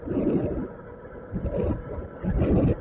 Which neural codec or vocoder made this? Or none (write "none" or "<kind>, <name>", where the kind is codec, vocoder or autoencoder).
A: none